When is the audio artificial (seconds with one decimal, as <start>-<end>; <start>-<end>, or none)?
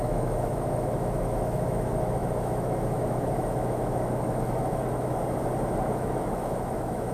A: 0.0-5.2; 5.7-7.1